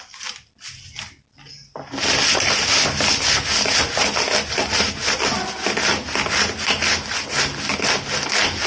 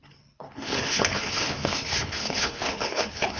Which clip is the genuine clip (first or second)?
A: first